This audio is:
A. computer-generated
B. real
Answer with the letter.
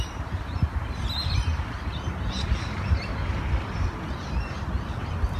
A